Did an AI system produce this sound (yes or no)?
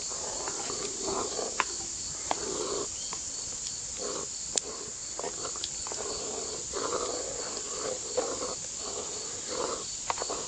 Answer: no